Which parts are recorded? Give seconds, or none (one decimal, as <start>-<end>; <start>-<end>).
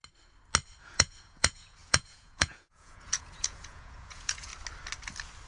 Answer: 0.0-0.8; 4.5-5.5